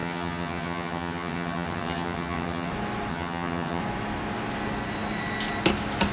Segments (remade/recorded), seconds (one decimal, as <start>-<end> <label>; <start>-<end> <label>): 0.0-2.7 remade; 2.7-3.1 recorded; 3.1-3.8 remade; 3.8-6.1 recorded